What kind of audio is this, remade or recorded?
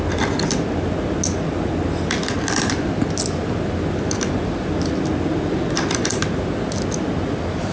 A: recorded